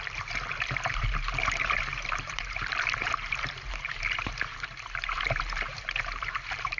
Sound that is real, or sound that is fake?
fake